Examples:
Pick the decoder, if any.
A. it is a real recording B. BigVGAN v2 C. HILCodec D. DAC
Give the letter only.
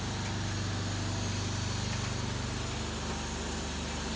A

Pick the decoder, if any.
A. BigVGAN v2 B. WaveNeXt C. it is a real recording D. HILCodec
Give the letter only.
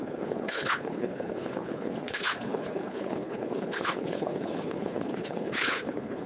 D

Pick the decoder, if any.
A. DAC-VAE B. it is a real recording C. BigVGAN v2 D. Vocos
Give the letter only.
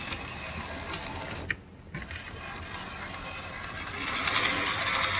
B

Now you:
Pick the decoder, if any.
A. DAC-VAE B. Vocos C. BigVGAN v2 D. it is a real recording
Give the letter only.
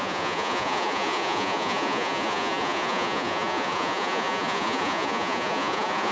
B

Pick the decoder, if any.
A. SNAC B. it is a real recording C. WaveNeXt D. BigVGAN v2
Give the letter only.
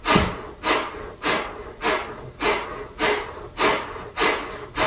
B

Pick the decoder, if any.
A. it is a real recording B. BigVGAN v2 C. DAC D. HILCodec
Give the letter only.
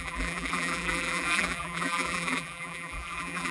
B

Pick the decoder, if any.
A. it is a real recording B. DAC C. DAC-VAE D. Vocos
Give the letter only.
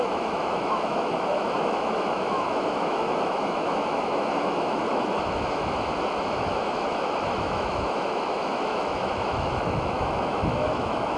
C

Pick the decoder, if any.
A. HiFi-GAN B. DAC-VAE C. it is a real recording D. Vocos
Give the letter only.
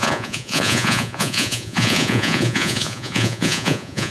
D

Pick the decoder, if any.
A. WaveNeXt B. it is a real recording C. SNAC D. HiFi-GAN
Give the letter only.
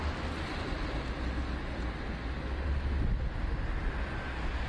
B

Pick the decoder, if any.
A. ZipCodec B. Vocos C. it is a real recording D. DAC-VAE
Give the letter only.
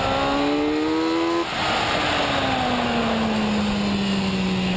C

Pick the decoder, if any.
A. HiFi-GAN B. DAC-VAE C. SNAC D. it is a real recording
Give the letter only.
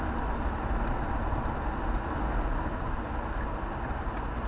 D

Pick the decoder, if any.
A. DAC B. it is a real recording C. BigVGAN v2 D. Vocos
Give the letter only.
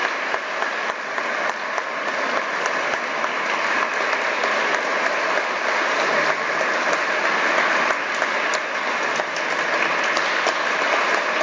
B